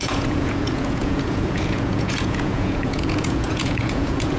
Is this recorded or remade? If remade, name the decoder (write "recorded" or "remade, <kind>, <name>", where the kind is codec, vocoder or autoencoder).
remade, vocoder, Vocos